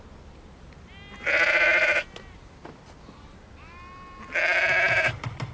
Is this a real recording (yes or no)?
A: yes